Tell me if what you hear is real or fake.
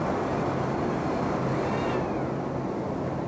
real